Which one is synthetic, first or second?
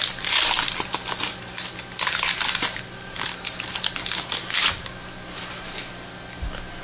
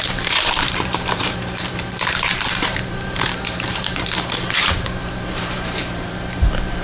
second